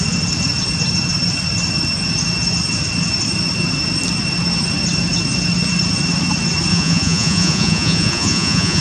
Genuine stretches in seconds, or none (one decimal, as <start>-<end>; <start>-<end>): 0.0-6.7